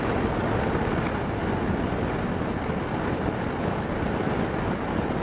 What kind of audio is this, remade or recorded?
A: recorded